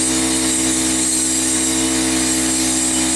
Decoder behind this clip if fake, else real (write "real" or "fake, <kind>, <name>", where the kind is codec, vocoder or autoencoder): real